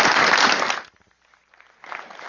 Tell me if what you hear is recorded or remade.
recorded